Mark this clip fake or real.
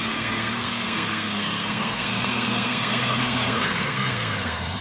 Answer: fake